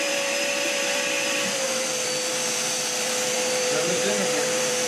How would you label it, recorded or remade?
remade